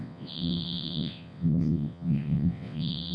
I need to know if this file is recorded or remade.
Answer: remade